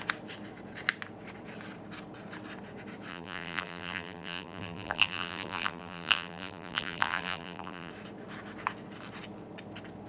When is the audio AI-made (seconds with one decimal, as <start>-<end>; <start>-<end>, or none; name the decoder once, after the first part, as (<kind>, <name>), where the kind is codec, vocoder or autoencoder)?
3.1-7.9 (vocoder, BigVGAN v2)